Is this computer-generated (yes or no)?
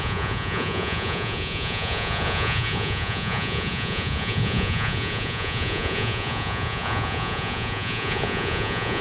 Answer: yes